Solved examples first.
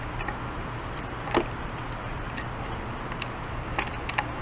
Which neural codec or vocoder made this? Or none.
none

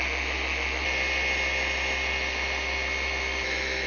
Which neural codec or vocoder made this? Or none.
none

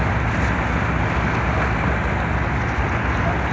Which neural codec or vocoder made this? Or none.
none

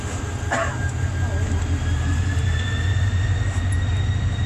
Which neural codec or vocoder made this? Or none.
none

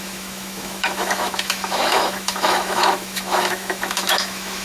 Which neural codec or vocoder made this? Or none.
autoencoder, DAC-VAE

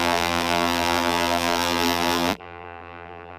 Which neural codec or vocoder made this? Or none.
vocoder, BigVGAN v2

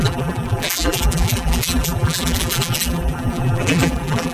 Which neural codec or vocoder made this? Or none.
vocoder, BigVGAN v2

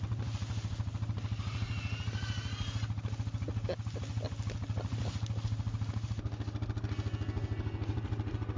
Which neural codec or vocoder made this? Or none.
none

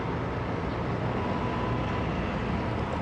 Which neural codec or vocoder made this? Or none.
none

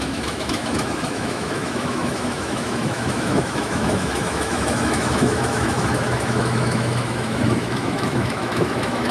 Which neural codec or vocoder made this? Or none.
autoencoder, DAC-VAE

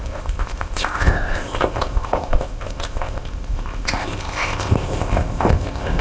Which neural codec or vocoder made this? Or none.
codec, ZipCodec